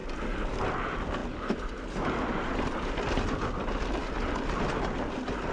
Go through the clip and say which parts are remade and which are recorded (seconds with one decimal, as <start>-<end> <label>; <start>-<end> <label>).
0.0-5.5 recorded